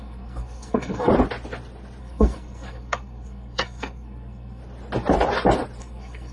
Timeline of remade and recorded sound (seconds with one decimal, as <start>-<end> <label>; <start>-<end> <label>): 0.0-1.1 remade; 1.1-2.0 recorded; 2.0-4.6 remade; 4.6-5.8 recorded; 5.8-6.3 remade